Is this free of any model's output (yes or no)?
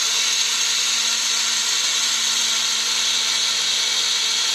yes